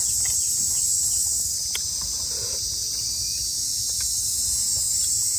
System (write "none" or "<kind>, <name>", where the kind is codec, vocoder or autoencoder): none